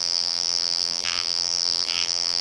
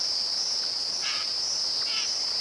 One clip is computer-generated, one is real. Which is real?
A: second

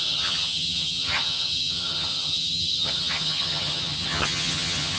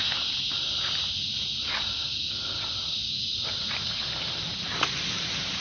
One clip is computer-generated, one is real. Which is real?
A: second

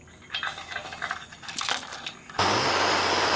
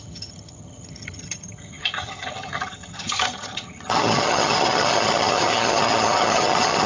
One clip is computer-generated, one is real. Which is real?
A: first